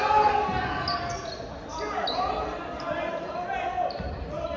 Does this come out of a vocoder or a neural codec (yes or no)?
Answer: no